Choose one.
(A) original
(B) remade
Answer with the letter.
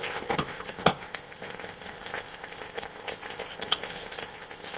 B